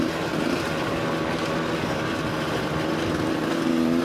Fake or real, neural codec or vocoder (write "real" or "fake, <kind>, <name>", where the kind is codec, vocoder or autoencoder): real